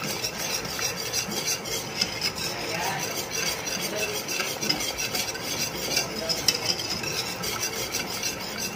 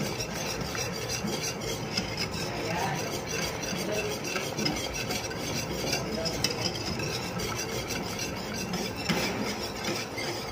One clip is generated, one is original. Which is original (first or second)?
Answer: first